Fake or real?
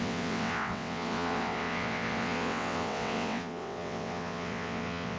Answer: fake